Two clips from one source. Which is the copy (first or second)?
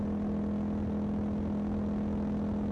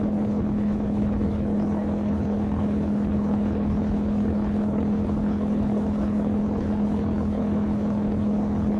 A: second